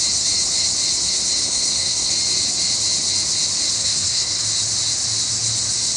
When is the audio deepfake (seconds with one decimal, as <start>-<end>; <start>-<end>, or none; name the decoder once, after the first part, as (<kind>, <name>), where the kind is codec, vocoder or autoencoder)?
1.4-2.1 (codec, SNAC); 3.8-4.4